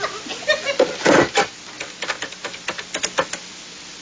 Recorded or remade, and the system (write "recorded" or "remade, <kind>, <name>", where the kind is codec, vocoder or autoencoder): recorded